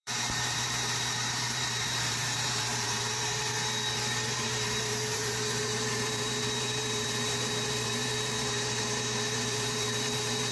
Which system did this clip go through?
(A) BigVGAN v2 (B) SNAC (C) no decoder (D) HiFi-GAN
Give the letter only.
A